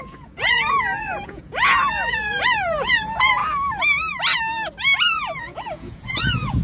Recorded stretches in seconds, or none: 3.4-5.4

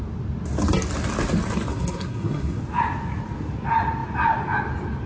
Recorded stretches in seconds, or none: 0.0-1.7; 2.6-5.1

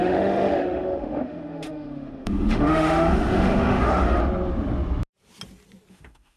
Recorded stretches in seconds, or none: 4.2-5.9

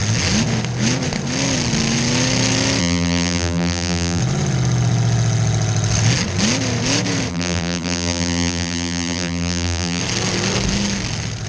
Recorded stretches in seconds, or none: 0.0-2.8; 4.2-7.3; 10.0-11.5